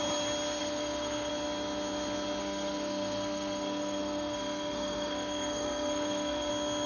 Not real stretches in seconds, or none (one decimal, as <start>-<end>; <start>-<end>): 0.6-1.3; 2.4-6.5